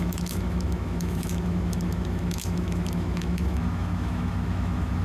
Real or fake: fake